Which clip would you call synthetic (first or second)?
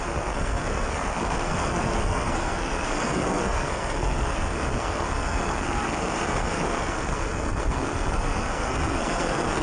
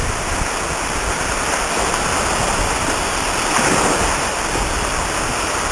first